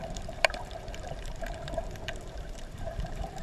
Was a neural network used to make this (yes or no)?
yes